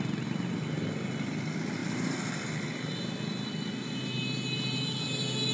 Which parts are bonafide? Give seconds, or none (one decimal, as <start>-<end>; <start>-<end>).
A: 0.0-5.5